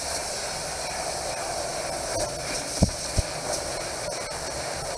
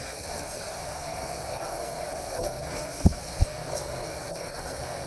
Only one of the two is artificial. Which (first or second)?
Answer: second